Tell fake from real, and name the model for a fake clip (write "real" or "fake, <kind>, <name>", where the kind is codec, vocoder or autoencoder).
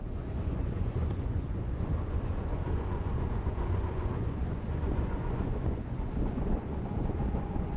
fake, vocoder, Vocos